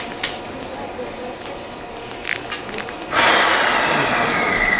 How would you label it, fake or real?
real